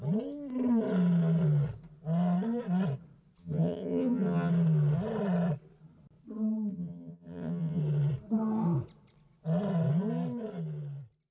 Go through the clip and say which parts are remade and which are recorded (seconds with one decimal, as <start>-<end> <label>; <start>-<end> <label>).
0.0-3.4 recorded; 3.4-4.5 remade; 4.5-6.7 recorded; 6.7-7.8 remade; 7.8-11.3 recorded